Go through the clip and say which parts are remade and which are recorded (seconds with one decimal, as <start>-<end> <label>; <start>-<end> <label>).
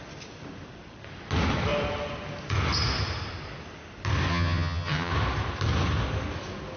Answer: 0.0-4.3 recorded; 4.3-5.1 remade; 5.1-6.8 recorded